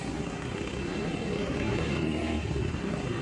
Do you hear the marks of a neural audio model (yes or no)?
yes